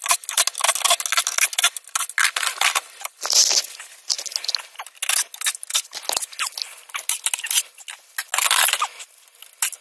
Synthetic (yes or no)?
no